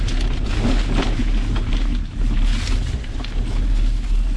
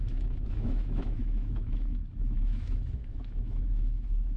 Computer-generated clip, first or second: second